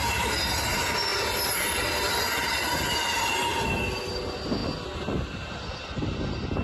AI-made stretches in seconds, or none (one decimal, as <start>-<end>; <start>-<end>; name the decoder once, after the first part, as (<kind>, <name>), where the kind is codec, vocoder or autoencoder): none